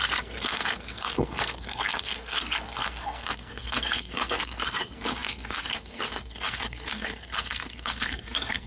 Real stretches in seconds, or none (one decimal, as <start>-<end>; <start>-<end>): none